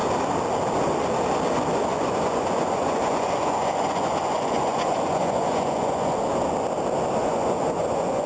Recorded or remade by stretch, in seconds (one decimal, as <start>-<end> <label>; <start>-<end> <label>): 0.0-1.9 recorded; 1.9-6.2 remade; 6.2-7.2 recorded; 7.2-8.3 remade